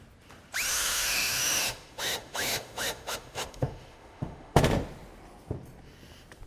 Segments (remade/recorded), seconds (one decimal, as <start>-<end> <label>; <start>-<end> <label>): 0.0-0.7 recorded; 0.7-4.6 remade; 4.6-6.5 recorded